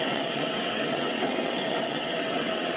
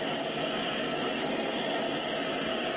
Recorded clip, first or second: second